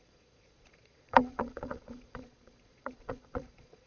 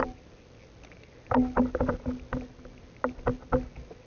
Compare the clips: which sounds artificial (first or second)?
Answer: first